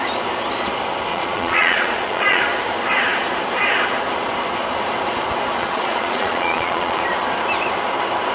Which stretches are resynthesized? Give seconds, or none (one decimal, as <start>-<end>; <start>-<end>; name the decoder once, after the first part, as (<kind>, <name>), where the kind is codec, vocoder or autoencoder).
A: 1.1-2.4 (vocoder, Vocos); 5.6-7.0